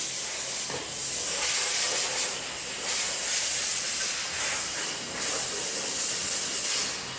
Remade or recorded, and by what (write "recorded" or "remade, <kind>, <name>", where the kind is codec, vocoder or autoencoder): recorded